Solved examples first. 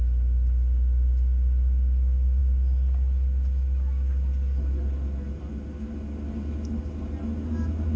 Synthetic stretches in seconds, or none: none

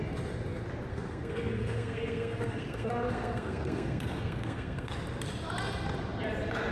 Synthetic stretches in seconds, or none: 0.9-4.9

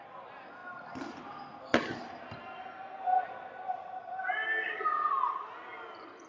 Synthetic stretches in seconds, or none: none

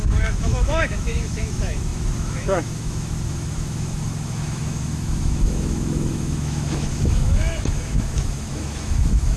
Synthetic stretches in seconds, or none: 0.0-9.4